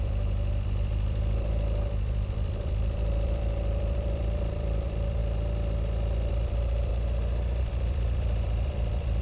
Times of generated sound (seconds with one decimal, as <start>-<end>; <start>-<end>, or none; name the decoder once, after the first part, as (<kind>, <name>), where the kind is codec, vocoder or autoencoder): 0.0-5.2 (vocoder, BigVGAN v2); 6.3-6.9; 7.6-9.2